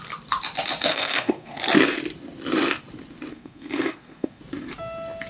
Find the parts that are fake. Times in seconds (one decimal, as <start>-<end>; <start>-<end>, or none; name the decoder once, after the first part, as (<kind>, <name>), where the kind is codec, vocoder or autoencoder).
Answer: 0.9-1.6 (codec, SNAC); 3.3-4.4